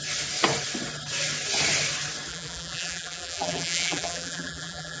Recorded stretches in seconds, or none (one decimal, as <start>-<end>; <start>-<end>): 0.0-2.3